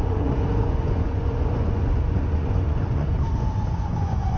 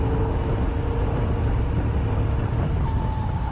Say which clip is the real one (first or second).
second